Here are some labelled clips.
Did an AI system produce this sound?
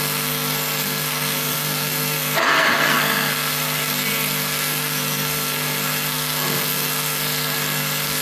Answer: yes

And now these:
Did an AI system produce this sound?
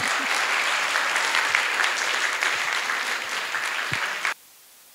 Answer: yes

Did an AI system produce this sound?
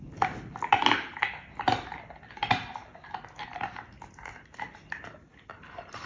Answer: no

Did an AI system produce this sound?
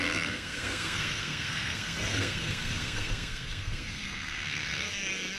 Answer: yes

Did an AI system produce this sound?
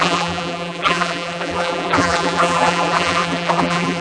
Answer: yes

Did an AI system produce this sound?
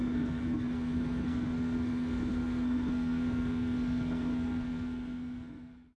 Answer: yes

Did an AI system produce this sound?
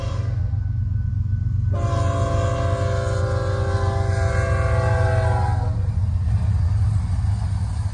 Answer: no